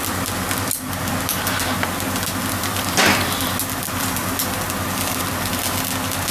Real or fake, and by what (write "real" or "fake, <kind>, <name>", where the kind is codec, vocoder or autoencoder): real